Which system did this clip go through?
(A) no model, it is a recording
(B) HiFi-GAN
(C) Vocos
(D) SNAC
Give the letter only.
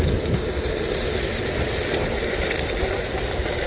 A